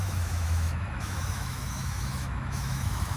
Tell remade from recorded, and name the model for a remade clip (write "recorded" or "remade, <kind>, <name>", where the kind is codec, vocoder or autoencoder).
remade, autoencoder, DAC-VAE